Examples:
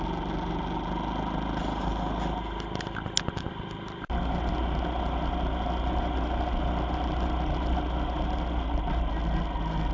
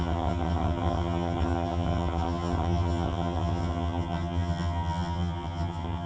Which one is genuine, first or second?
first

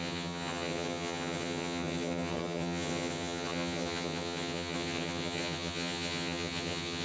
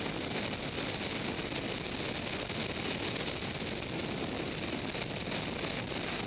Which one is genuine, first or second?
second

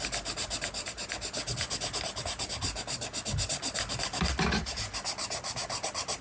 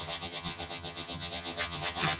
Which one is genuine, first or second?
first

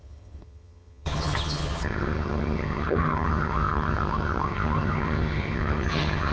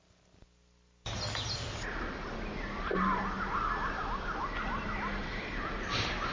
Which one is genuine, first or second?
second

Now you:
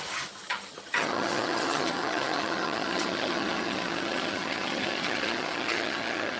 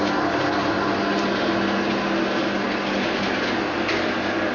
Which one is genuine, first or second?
second